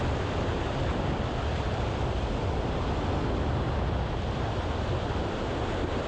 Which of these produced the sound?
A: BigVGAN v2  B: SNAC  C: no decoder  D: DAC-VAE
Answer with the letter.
C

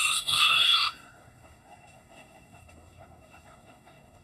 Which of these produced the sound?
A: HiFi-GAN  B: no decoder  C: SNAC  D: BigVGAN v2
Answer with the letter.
C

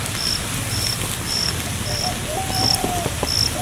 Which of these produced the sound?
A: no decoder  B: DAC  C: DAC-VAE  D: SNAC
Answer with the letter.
A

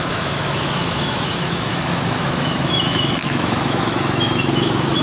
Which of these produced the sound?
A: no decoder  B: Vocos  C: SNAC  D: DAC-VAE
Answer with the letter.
D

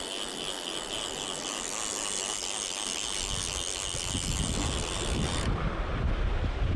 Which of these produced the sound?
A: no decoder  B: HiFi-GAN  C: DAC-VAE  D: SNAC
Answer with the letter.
A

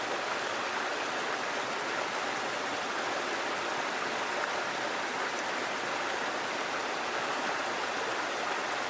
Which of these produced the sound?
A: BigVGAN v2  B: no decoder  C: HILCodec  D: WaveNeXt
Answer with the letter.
B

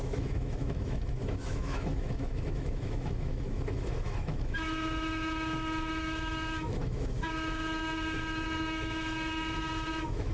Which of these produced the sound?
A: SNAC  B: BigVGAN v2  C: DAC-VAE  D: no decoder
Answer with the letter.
C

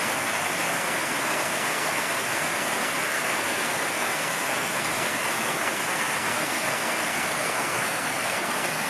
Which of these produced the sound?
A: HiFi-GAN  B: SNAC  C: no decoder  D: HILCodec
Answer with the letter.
B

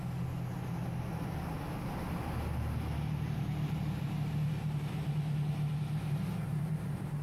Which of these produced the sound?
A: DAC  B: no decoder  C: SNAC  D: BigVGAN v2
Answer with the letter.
B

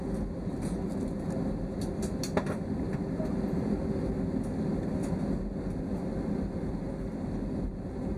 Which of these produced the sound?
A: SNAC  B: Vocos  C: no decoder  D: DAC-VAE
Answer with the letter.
C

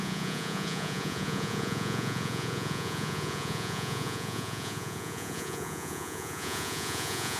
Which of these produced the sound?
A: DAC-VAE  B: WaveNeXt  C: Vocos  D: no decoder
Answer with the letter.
C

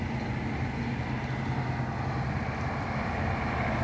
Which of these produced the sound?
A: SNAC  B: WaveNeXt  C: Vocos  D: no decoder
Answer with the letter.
D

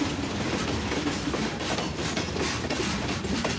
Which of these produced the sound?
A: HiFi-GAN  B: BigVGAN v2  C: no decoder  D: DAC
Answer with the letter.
C